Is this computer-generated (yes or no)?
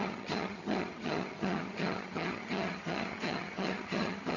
yes